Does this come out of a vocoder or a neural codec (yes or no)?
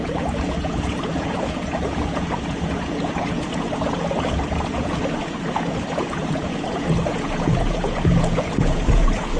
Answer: yes